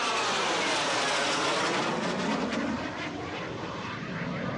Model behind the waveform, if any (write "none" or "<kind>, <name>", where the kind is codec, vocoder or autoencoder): none